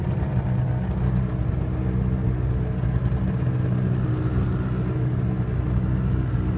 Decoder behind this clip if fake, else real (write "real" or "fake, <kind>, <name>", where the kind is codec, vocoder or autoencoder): real